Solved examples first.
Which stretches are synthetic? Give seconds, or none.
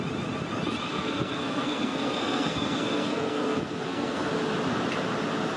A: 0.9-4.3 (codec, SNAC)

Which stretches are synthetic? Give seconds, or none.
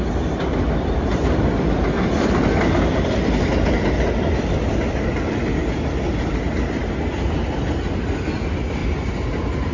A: none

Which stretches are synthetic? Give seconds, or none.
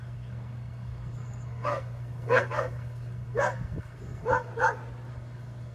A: 0.0-4.5 (codec, SNAC); 5.1-5.7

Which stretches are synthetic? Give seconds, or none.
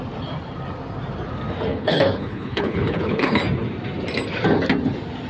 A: 1.7-3.4 (codec, HILCodec)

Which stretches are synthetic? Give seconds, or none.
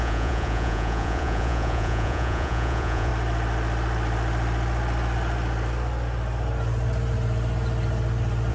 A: 0.0-3.1 (vocoder, Vocos)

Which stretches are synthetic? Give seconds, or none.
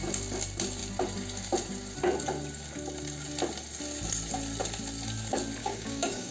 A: 5.6-6.3 (codec, DAC)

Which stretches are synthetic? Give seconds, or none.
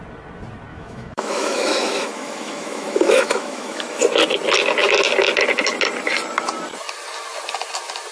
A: 0.7-4.0 (autoencoder, DAC-VAE)